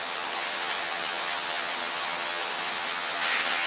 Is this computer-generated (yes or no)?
yes